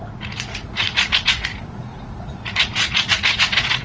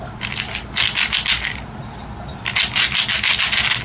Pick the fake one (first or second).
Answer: first